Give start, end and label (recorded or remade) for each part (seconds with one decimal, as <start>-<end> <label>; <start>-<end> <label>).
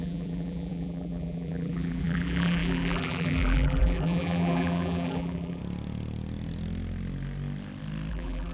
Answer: 0.0-5.6 remade; 5.6-8.1 recorded; 8.1-8.5 remade